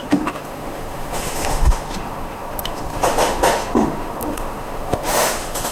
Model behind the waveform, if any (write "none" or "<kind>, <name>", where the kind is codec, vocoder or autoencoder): autoencoder, DAC-VAE